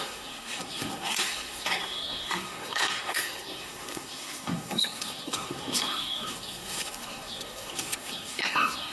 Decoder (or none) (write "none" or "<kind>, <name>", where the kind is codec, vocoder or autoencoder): codec, SNAC